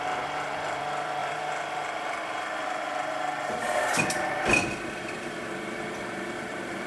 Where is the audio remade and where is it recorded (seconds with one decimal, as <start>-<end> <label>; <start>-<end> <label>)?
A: 0.0-6.9 remade